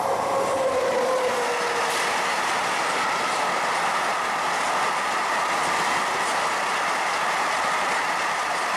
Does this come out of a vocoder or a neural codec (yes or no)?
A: no